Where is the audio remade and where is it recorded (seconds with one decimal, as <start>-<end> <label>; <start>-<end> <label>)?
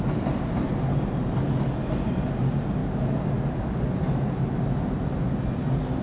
0.0-6.0 recorded